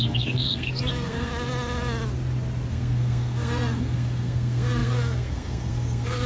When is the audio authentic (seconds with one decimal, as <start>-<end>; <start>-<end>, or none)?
1.3-2.7